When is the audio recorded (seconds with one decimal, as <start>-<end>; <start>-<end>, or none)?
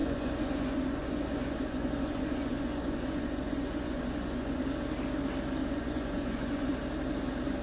4.6-5.6; 6.7-7.6